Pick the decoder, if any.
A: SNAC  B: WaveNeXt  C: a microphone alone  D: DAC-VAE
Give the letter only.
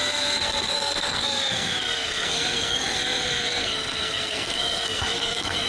A